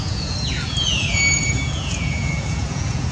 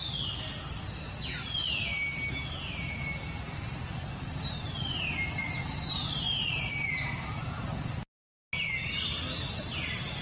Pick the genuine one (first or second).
second